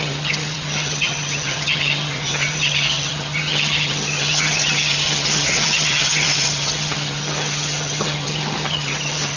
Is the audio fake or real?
fake